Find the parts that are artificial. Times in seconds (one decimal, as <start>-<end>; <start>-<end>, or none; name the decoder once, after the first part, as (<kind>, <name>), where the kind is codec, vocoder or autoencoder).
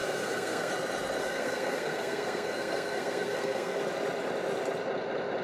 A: 0.0-0.7 (codec, SNAC); 1.2-3.8